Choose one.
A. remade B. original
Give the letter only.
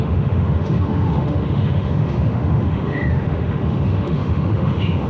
A